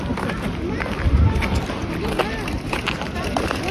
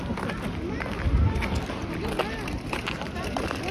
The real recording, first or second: second